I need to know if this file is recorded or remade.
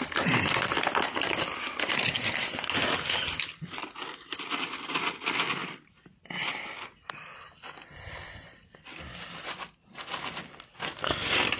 recorded